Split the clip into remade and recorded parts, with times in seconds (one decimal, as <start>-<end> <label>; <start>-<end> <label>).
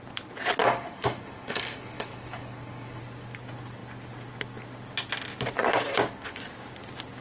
0.0-0.6 recorded; 0.6-3.0 remade; 3.0-7.2 recorded